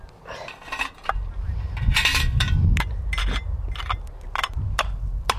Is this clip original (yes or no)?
yes